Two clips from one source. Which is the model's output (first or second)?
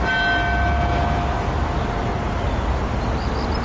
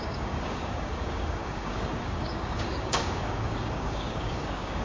second